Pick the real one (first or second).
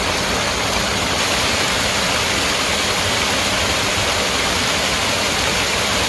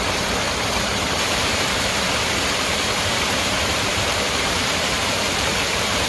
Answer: first